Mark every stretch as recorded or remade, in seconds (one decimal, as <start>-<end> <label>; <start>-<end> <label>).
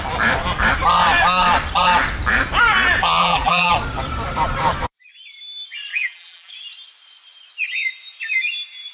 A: 0.0-3.2 recorded; 3.2-3.7 remade; 3.7-5.9 recorded; 5.9-6.5 remade; 6.5-8.9 recorded